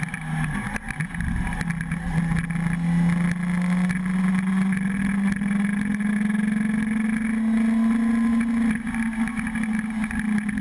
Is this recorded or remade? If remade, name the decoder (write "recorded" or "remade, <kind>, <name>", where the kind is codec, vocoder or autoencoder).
recorded